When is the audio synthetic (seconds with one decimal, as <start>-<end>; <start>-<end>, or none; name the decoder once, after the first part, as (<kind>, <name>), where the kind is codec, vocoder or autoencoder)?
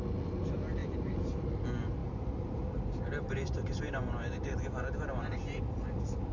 0.8-1.6 (vocoder, BigVGAN v2); 2.0-5.8